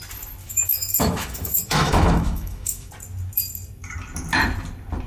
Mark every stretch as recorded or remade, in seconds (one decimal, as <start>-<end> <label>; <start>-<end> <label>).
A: 0.0-0.4 recorded; 0.4-2.9 remade; 2.9-5.1 recorded